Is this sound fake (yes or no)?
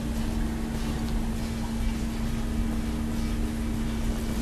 no